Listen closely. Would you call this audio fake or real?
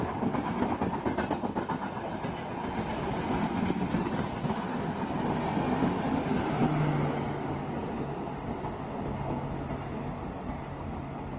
real